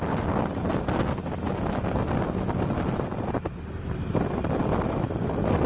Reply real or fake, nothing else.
real